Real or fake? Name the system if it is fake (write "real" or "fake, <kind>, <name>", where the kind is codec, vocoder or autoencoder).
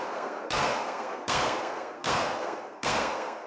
fake, codec, SNAC